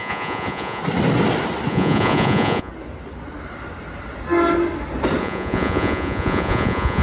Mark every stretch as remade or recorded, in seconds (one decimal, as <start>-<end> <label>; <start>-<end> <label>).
0.0-0.8 remade; 0.8-1.7 recorded; 1.7-2.7 remade; 2.7-5.2 recorded; 5.2-7.0 remade